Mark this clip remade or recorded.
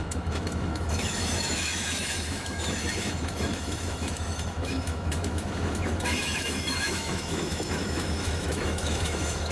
remade